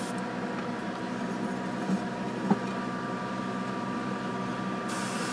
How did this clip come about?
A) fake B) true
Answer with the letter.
B